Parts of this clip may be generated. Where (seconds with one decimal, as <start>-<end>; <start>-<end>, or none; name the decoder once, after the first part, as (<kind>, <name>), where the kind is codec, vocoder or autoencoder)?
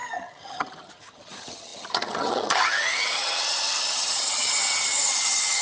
0.0-5.6 (vocoder, HiFi-GAN)